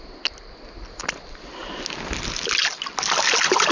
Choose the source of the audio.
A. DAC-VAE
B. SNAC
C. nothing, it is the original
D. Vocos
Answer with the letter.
C